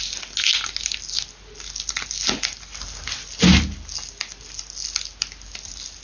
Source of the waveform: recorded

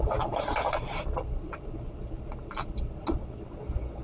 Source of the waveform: recorded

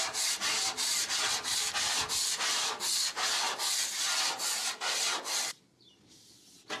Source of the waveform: remade